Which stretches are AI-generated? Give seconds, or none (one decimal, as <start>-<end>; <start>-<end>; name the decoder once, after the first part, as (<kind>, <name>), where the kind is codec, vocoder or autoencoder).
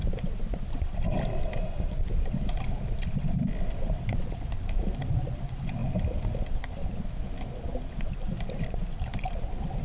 3.6-5.8 (vocoder, BigVGAN v2); 8.2-9.8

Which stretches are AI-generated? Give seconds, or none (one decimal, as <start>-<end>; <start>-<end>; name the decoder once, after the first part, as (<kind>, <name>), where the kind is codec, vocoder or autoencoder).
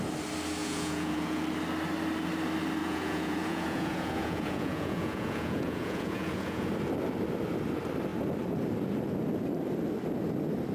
0.6-1.4 (vocoder, Vocos); 2.8-6.7